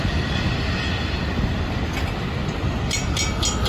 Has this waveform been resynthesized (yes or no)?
no